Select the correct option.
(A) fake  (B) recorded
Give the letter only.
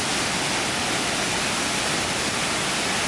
B